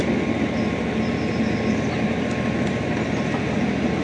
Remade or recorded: recorded